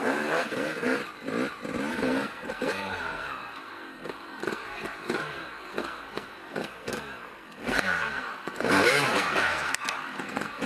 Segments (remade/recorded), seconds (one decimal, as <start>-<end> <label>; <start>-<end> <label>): 0.0-1.0 remade; 1.0-1.9 recorded; 1.9-10.7 remade